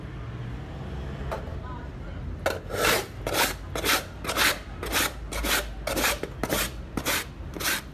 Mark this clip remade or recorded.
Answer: recorded